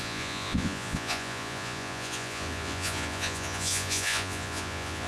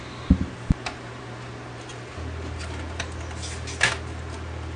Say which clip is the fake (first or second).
first